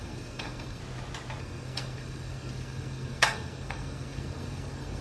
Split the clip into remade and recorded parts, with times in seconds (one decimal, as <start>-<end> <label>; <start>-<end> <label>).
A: 0.0-0.8 remade; 0.8-1.4 recorded; 1.4-5.0 remade